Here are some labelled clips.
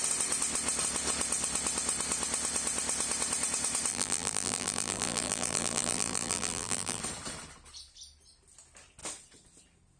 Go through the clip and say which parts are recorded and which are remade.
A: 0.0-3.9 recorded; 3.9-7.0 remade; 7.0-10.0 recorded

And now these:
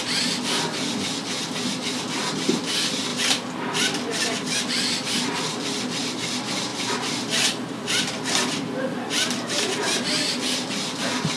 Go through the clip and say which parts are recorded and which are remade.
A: 0.0-3.1 recorded; 3.1-4.2 remade; 4.2-6.7 recorded; 6.7-9.6 remade; 9.6-11.4 recorded